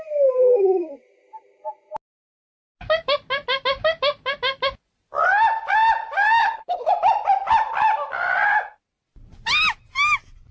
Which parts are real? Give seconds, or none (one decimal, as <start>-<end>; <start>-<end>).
0.0-6.4; 6.9-10.5